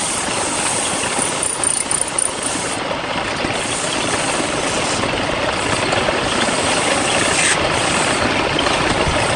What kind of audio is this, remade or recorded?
recorded